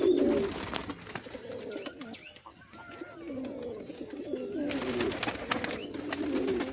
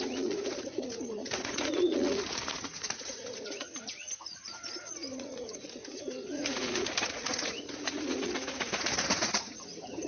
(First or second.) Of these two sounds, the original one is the first